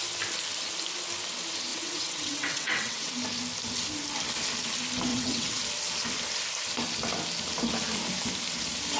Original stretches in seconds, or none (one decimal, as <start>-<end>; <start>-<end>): 0.0-1.7; 3.1-5.1; 5.6-9.0